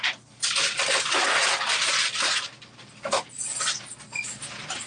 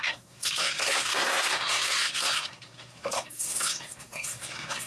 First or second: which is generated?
second